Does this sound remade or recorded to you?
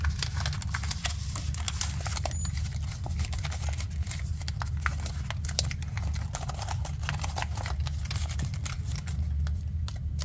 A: recorded